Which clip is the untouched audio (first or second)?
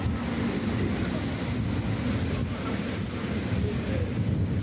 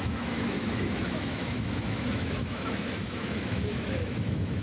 first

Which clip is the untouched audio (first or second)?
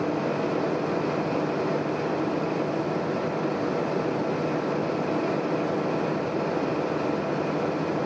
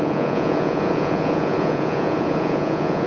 first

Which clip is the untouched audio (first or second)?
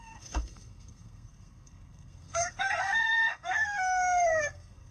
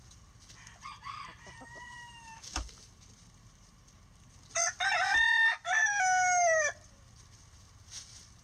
second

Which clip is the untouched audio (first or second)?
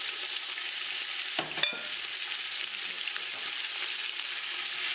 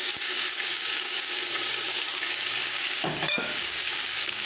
first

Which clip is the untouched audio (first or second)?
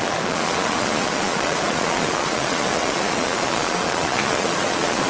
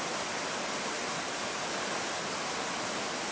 second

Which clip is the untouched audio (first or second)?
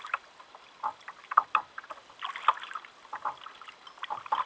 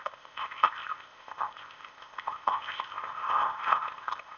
first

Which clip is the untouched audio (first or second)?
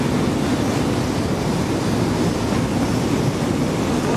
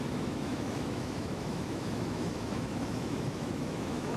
first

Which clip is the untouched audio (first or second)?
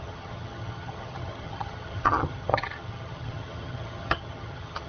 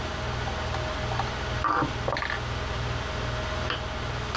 second